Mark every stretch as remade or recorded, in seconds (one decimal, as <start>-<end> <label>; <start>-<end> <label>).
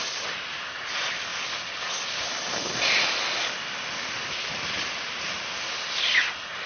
0.0-6.7 recorded